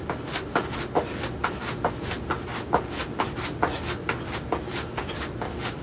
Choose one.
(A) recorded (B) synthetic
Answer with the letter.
A